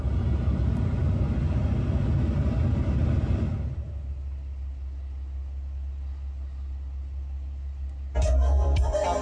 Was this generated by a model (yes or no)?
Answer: no